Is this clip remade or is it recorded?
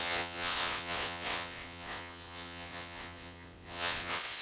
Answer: remade